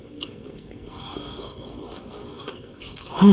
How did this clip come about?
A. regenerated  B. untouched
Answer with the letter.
A